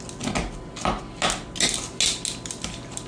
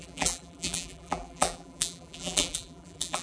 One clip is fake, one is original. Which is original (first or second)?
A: first